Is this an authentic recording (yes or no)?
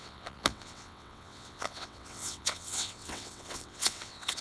no